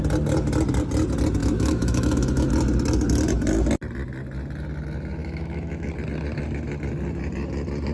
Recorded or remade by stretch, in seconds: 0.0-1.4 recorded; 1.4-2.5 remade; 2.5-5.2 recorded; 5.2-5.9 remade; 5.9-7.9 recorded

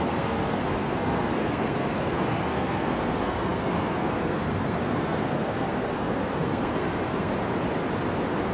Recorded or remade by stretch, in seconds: 0.0-7.3 remade; 7.3-8.5 recorded

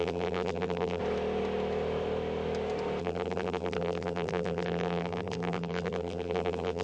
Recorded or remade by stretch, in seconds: 0.0-1.0 remade; 1.0-3.0 recorded; 3.0-6.8 remade

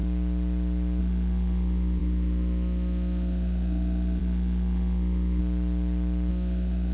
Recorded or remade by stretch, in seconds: 0.0-1.0 recorded; 1.0-5.4 remade; 5.4-6.3 recorded; 6.3-6.9 remade